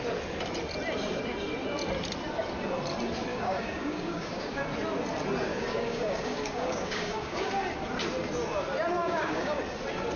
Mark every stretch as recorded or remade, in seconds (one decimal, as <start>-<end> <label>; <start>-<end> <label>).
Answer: 0.0-3.3 recorded; 3.3-4.6 remade; 4.6-5.5 recorded; 5.5-7.5 remade; 7.5-9.0 recorded; 9.0-9.6 remade; 9.6-10.2 recorded

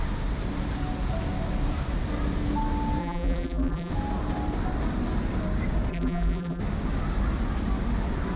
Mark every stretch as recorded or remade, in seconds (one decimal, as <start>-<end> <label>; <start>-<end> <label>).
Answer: 0.0-3.0 recorded; 3.0-3.9 remade; 3.9-5.9 recorded; 5.9-6.6 remade; 6.6-8.4 recorded

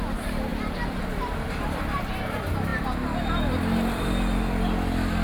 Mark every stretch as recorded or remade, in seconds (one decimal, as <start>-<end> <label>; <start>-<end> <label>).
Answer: 0.0-5.2 recorded

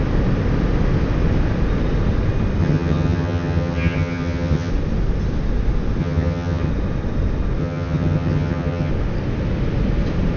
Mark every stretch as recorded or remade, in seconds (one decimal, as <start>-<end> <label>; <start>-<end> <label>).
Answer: 0.0-2.6 recorded; 2.6-4.7 remade; 4.7-6.0 recorded; 6.0-6.7 remade; 6.7-7.6 recorded; 7.6-8.9 remade; 8.9-10.4 recorded

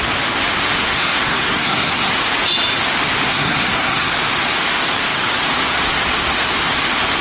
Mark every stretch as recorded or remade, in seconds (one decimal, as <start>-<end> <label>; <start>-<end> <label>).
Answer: 0.0-0.8 recorded; 0.8-2.1 remade; 2.1-3.3 recorded; 3.3-4.1 remade; 4.1-7.2 recorded

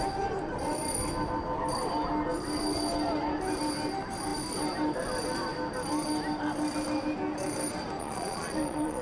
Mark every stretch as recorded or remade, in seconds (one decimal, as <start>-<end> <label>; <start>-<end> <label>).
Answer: 0.0-8.0 recorded; 8.0-9.0 remade

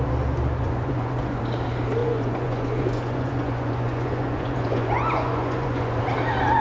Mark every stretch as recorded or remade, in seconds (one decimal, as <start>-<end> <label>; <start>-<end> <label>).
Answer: 0.0-0.6 recorded; 0.6-1.4 remade; 1.4-2.0 recorded; 2.0-6.0 remade; 6.0-6.6 recorded